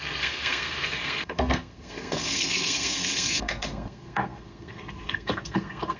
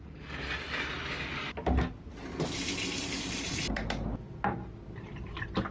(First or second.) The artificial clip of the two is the first